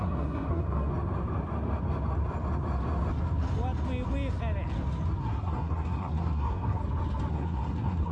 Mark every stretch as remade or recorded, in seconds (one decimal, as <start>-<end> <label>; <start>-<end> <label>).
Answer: 0.0-0.9 remade; 0.9-5.2 recorded; 5.2-6.8 remade; 6.8-7.3 recorded; 7.3-8.1 remade